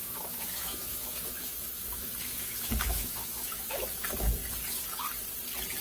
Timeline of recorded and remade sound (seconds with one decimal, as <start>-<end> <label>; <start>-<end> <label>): 0.0-4.4 remade; 4.4-5.8 recorded